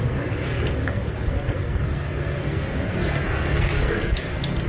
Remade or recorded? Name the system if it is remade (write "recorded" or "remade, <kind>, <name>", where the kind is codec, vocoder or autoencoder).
remade, codec, SNAC